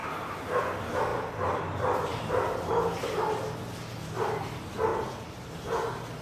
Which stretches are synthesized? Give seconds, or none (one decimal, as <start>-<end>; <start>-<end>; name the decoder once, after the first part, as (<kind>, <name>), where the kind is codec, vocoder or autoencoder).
0.0-0.6 (vocoder, BigVGAN v2); 1.1-1.6; 2.1-2.7; 4.9-5.5